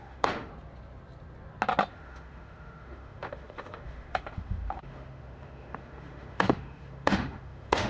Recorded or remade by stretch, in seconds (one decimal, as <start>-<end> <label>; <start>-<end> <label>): 0.0-0.5 remade; 0.5-1.9 recorded; 1.9-7.9 remade